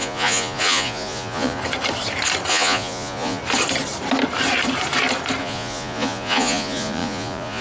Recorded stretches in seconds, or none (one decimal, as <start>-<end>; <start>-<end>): 1.6-2.5; 3.4-5.4